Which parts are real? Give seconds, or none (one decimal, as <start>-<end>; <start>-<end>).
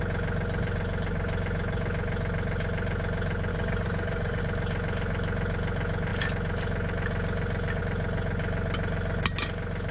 0.0-3.5; 4.4-9.9